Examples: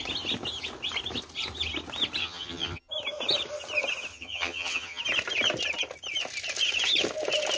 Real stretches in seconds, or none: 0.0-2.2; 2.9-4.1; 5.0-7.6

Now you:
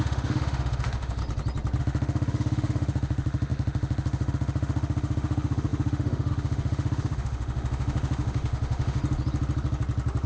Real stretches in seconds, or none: 1.2-1.8; 9.0-10.3

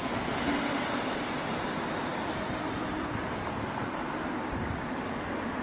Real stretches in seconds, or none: 0.0-2.1; 3.8-5.6

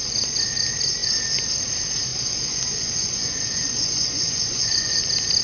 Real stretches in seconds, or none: 0.0-2.1; 5.0-5.4

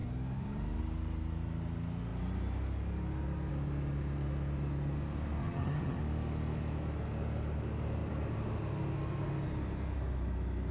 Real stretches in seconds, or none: 0.0-5.4; 6.0-10.7

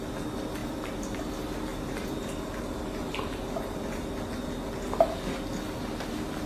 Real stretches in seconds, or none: 0.0-0.6; 1.2-1.7; 4.3-6.5

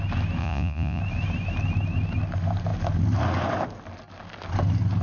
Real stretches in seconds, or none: 0.0-0.4; 1.0-5.0

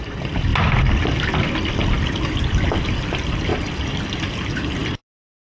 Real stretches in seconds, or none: 0.5-2.8; 3.5-4.3; 4.8-5.6